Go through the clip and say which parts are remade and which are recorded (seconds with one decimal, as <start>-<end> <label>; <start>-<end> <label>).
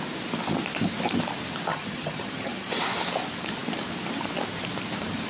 0.0-1.7 recorded; 1.7-2.8 remade; 2.8-5.3 recorded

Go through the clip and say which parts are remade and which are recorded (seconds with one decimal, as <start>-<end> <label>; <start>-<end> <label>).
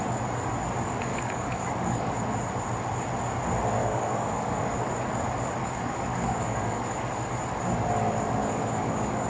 0.0-1.1 recorded; 1.1-2.2 remade; 2.2-3.8 recorded; 3.8-4.9 remade; 4.9-5.6 recorded; 5.6-7.3 remade; 7.3-8.4 recorded; 8.4-9.3 remade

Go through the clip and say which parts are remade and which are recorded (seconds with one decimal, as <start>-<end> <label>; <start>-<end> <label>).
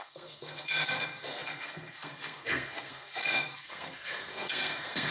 0.0-5.1 remade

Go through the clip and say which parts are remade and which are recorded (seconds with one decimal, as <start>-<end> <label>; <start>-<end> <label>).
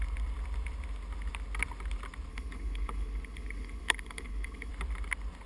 0.0-2.3 recorded; 2.3-4.7 remade; 4.7-5.5 recorded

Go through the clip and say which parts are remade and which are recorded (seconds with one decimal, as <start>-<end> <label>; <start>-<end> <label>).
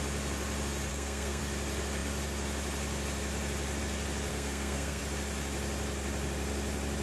0.0-0.9 recorded; 0.9-1.4 remade; 1.4-4.3 recorded; 4.3-5.0 remade; 5.0-7.0 recorded